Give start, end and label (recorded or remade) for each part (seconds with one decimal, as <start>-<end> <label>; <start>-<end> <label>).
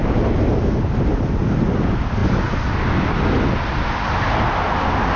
0.0-5.2 recorded